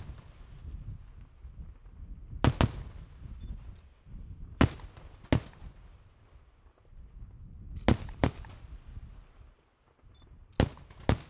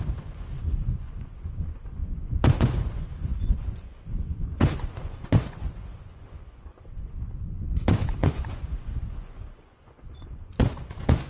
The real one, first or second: first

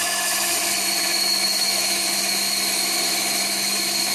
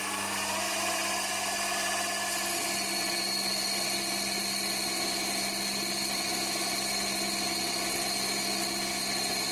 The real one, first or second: second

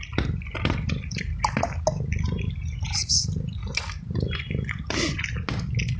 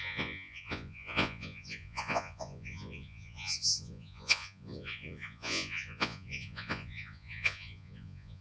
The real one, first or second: first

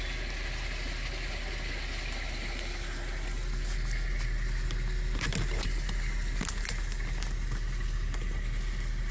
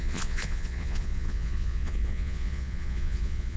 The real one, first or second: first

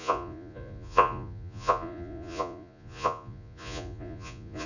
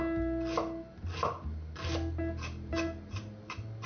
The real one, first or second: second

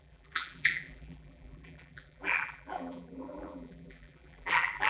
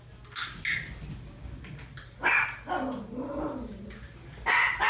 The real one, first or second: second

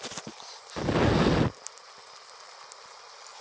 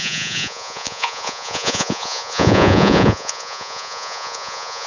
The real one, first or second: first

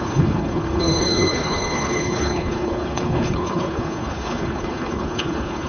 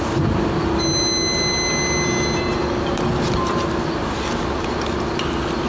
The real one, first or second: second